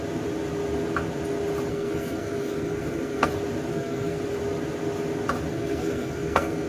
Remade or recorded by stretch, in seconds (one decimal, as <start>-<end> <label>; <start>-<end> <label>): 0.0-1.7 recorded; 1.7-3.3 remade; 3.3-3.7 recorded; 3.7-4.2 remade; 4.2-5.5 recorded; 5.5-6.7 remade